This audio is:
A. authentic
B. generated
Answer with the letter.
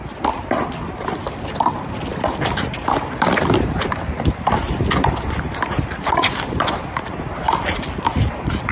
B